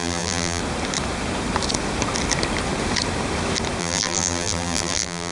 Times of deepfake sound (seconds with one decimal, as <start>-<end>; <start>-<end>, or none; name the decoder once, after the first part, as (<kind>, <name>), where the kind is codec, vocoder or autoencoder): 0.0-0.6 (vocoder, BigVGAN v2); 3.8-5.3